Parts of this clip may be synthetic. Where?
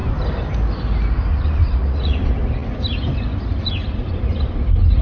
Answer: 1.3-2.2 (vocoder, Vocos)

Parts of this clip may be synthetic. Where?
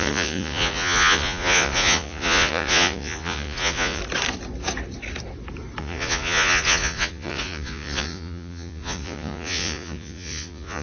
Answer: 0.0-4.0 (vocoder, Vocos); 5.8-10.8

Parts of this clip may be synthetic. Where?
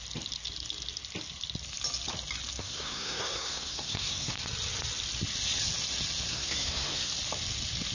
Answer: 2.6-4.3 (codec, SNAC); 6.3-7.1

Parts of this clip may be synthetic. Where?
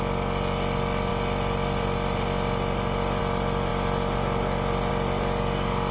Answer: none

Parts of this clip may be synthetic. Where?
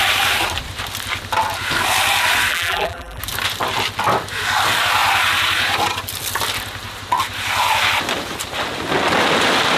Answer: 2.5-3.2 (vocoder, BigVGAN v2)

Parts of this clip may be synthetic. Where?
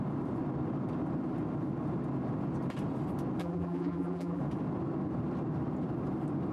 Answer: 3.4-4.4 (vocoder, BigVGAN v2)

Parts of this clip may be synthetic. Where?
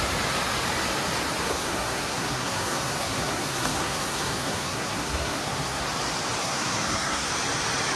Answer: 1.4-5.8 (codec, SNAC); 6.4-7.3